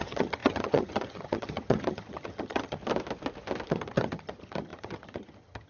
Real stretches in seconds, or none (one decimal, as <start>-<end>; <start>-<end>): 2.8-3.7